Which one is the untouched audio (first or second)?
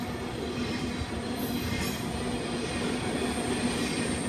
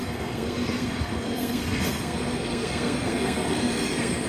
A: first